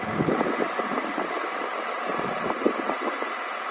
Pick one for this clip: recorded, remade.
recorded